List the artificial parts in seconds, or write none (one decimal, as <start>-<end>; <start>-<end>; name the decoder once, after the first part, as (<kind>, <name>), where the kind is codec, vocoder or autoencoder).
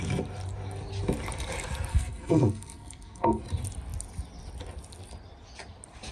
1.9-3.4 (codec, SNAC)